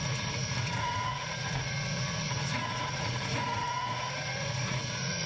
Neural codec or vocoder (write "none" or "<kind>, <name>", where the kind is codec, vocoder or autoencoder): vocoder, Vocos